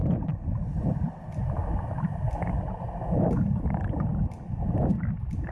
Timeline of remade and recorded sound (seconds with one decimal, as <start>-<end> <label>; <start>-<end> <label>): 0.0-1.4 remade; 1.4-5.5 recorded